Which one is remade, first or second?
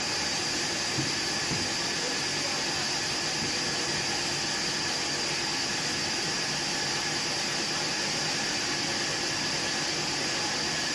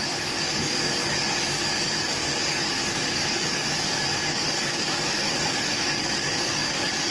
second